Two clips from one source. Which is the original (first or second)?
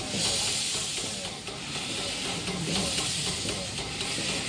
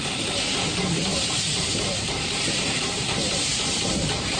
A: first